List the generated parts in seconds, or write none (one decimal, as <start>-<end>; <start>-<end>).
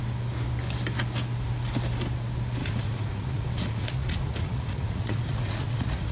2.6-6.1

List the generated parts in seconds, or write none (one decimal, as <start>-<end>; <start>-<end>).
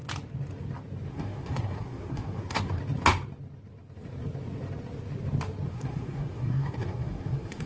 1.1-2.8; 5.7-7.7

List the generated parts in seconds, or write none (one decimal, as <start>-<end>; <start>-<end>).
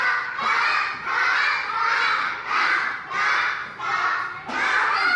2.2-2.7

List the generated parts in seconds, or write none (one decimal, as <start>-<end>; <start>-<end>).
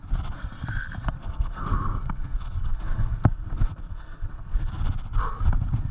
1.2-4.7